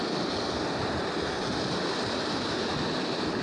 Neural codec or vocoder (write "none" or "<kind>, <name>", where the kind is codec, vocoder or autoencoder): none